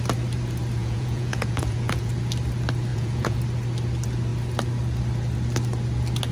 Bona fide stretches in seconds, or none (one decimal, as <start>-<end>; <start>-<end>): 0.0-0.8; 2.1-2.9; 3.4-6.3